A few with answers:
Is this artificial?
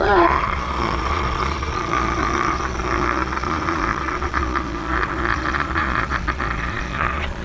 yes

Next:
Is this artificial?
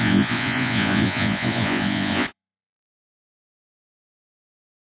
yes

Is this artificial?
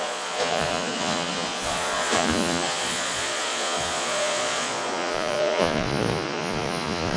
yes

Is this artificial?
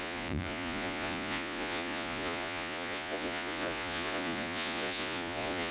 yes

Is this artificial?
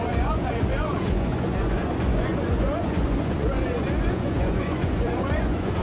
yes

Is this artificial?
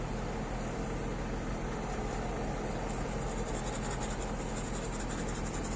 no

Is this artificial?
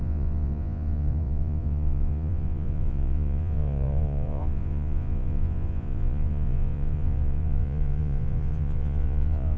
yes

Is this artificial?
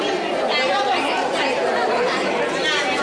no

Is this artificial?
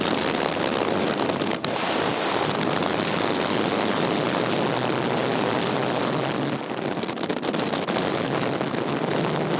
no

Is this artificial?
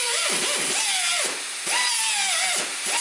no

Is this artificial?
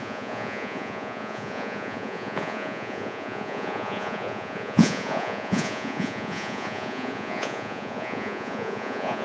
yes